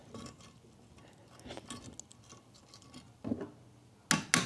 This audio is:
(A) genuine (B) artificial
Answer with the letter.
A